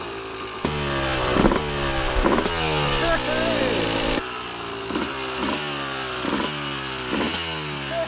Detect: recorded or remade recorded